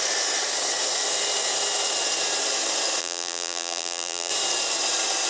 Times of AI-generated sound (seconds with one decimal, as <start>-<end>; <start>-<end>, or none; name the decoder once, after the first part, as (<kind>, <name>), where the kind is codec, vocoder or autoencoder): 3.0-4.3 (vocoder, BigVGAN v2)